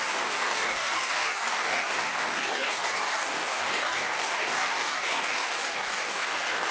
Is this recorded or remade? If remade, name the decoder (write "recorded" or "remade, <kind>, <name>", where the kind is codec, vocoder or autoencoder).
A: remade, codec, DAC